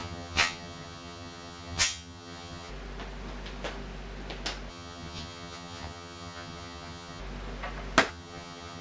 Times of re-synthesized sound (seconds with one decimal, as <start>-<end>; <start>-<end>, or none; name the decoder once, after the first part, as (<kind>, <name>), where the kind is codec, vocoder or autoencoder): 0.0-2.7 (vocoder, HiFi-GAN); 4.7-7.2; 8.1-8.8